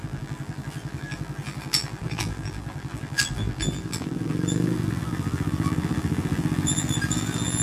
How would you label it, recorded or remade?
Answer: remade